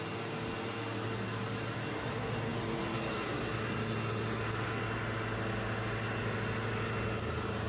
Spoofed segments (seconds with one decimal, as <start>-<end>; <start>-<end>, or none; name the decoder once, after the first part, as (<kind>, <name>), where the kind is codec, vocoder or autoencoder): none